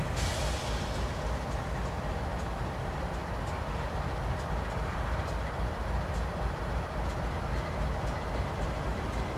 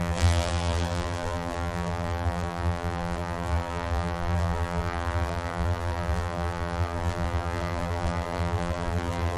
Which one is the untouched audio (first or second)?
first